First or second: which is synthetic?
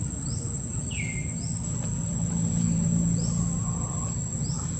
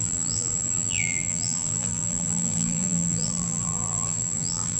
second